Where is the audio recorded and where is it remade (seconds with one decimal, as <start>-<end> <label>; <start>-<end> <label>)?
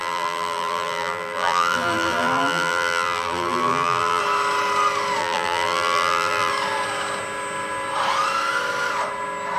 0.0-4.2 remade; 4.2-5.2 recorded; 5.2-6.5 remade; 6.5-9.6 recorded